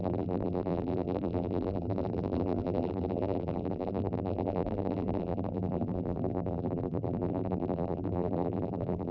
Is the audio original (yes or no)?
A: no